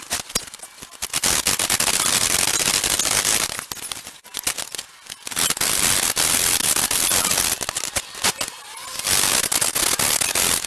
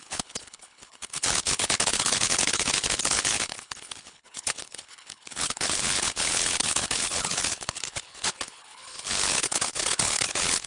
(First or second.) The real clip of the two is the first